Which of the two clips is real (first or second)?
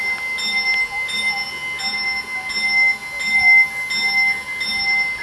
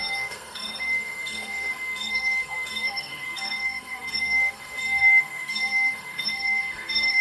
first